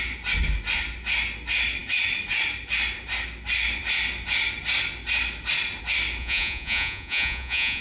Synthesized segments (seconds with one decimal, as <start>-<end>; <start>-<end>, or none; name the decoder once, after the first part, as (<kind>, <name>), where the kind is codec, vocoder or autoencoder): 6.2-7.8 (vocoder, Vocos)